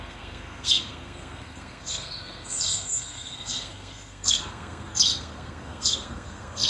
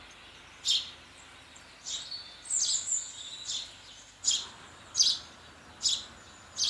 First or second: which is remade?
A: first